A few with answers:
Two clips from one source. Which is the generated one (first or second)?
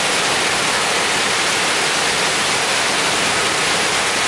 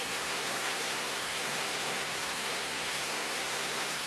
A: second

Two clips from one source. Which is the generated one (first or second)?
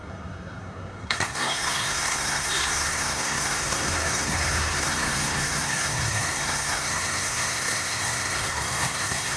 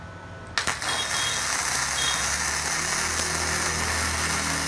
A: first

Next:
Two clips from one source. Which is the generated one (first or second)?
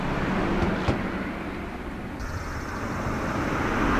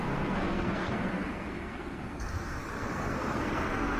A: second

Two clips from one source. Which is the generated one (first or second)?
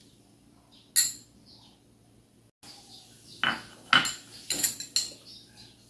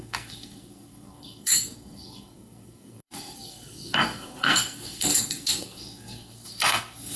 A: second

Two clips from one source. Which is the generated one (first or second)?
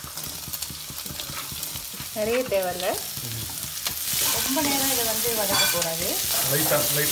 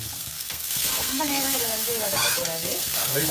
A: second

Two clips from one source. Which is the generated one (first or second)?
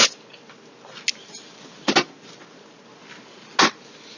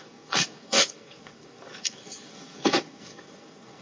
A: second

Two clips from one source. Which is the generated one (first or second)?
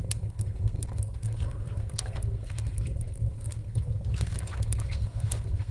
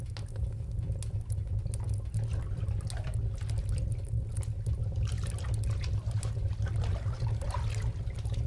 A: first